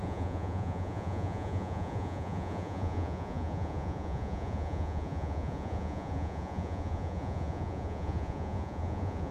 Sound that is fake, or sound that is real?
fake